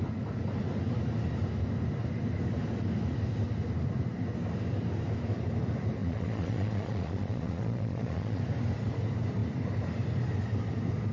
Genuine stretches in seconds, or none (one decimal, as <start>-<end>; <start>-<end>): 0.0-6.0; 8.4-11.1